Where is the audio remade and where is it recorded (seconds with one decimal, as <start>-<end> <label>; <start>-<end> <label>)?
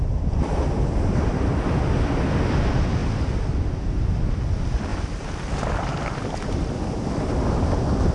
0.0-8.1 recorded